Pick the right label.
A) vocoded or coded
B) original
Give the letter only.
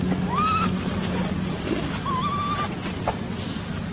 B